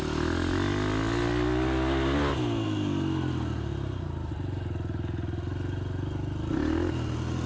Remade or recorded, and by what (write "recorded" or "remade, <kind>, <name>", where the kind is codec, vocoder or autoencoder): recorded